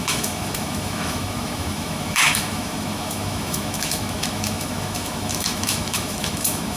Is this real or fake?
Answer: fake